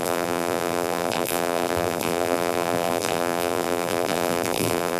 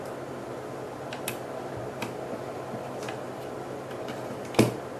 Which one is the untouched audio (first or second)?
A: second